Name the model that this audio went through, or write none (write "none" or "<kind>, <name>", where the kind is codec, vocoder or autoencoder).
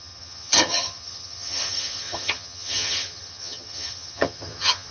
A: vocoder, HiFi-GAN